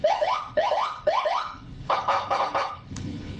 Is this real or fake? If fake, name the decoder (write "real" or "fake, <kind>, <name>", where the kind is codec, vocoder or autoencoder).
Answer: fake, codec, HILCodec